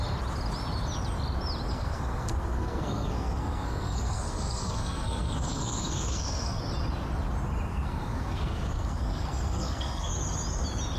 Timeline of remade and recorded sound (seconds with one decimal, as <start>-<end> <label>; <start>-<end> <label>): 0.0-1.7 recorded; 1.7-6.6 remade; 6.6-7.7 recorded; 7.7-10.1 remade; 10.1-11.0 recorded

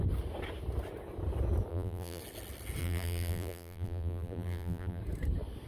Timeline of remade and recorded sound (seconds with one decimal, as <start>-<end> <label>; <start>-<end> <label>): 0.0-1.7 recorded; 1.7-2.2 remade; 2.2-2.8 recorded; 2.8-5.0 remade; 5.0-5.7 recorded

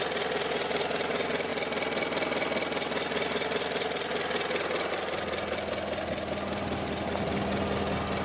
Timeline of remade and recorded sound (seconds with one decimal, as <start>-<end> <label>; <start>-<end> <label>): 0.0-8.2 recorded

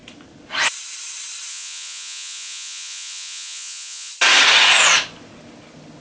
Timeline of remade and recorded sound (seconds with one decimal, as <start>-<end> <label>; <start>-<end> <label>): 0.0-1.5 recorded; 1.5-4.1 remade; 4.1-6.0 recorded

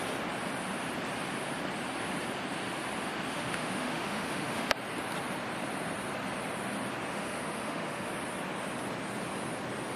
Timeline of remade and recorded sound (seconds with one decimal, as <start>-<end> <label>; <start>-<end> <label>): 0.0-3.3 recorded; 3.3-4.7 remade; 4.7-7.1 recorded; 7.1-8.1 remade; 8.1-10.0 recorded

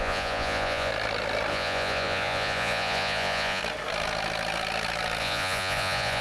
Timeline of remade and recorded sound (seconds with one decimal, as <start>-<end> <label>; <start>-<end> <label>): 0.0-0.9 remade; 0.9-1.5 recorded; 1.5-3.6 remade; 3.6-5.2 recorded; 5.2-6.2 remade

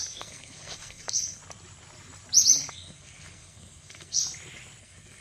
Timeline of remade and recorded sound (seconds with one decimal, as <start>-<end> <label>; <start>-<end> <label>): 0.0-1.4 remade; 1.4-2.7 recorded; 2.7-4.2 remade; 4.2-4.8 recorded; 4.8-5.2 remade